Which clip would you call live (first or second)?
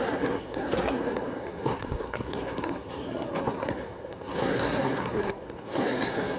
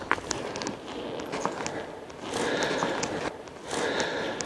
second